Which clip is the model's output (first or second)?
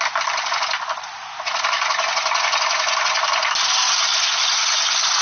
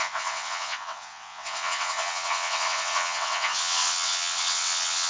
second